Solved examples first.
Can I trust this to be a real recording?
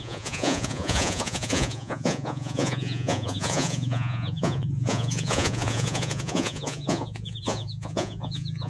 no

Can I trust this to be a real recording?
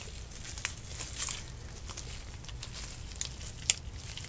yes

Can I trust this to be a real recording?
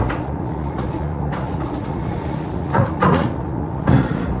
no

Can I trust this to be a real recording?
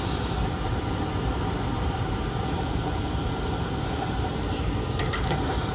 no